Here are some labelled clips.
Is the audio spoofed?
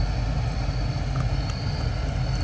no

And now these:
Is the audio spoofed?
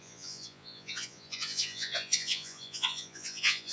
yes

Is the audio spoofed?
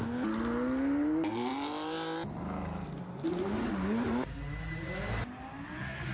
no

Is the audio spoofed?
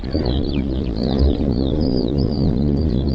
yes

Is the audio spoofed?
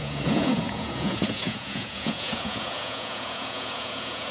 yes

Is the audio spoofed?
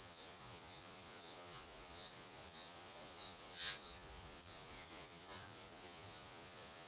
yes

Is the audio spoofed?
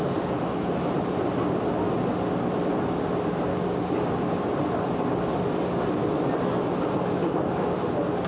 no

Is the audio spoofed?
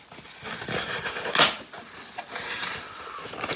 no